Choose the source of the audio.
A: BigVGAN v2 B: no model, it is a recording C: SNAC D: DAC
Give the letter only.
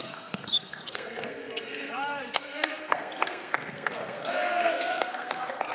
C